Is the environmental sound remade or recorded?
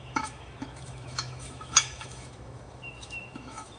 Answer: remade